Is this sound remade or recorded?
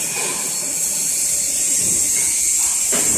recorded